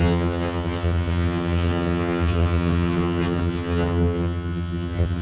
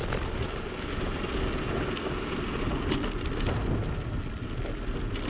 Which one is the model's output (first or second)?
first